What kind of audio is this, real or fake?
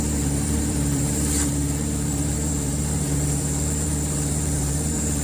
fake